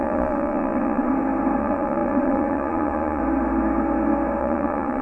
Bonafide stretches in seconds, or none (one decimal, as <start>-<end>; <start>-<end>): 1.1-1.6; 3.2-4.4

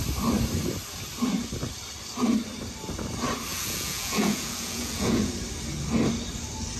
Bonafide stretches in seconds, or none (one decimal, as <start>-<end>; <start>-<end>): 0.0-3.5; 5.3-6.8

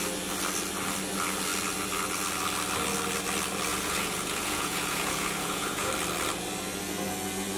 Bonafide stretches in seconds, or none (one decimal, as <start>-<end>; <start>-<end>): 0.0-3.7; 5.9-7.6

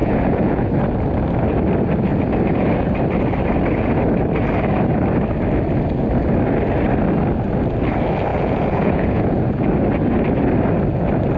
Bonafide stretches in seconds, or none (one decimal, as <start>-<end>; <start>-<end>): 0.7-8.3; 9.6-11.4

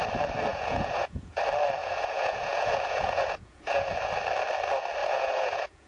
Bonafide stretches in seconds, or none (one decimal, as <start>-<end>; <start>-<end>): 0.0-0.5; 1.4-1.8; 4.1-5.0